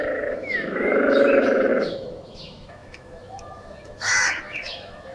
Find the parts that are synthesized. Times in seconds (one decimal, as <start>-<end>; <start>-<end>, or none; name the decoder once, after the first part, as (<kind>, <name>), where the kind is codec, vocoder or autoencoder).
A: 0.0-5.1 (autoencoder, DAC-VAE)